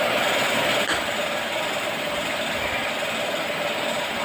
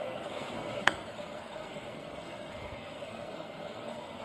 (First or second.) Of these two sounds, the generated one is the second